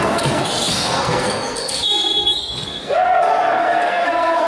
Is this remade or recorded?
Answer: remade